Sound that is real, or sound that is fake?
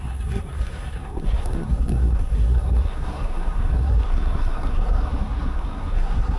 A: fake